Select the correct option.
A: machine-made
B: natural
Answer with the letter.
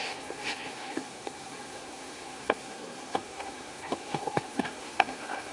A